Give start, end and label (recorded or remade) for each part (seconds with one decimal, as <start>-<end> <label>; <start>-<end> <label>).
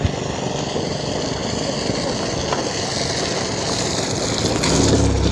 0.0-5.3 recorded